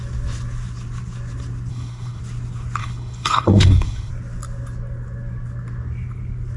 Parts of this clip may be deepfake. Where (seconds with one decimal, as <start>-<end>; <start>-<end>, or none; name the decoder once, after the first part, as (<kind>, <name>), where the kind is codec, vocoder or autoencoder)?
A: 1.7-2.2 (codec, HILCodec); 2.8-4.1